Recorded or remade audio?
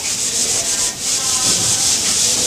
recorded